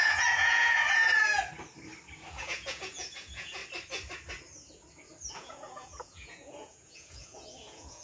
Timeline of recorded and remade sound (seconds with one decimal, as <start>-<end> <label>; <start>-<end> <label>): 0.0-1.4 remade; 1.4-2.3 recorded; 2.3-3.6 remade; 3.6-5.3 recorded; 5.3-8.0 remade